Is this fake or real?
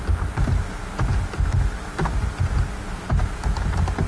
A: real